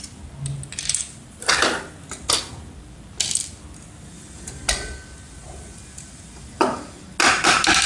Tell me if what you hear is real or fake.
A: real